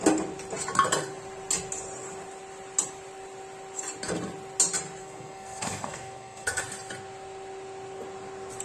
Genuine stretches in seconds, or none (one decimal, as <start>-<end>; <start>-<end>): 0.0-5.0; 6.6-8.6